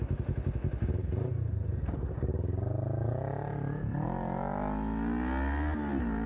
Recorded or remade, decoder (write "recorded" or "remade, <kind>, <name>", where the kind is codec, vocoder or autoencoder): recorded